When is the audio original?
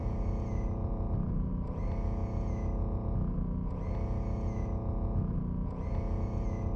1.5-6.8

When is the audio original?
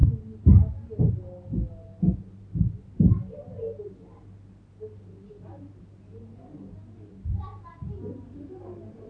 0.0-9.1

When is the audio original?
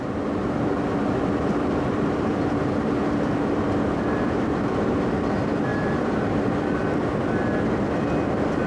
0.0-0.4; 2.6-5.7; 7.8-8.7